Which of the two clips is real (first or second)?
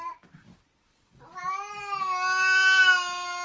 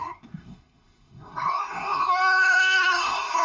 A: first